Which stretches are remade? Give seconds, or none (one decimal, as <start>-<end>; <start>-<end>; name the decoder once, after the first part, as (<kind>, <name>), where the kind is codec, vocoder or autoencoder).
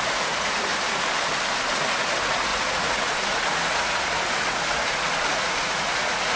0.0-0.7 (vocoder, Vocos); 1.7-6.4